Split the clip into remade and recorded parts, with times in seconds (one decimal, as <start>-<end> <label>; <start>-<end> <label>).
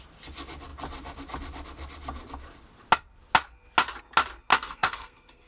0.0-4.5 recorded; 4.5-5.5 remade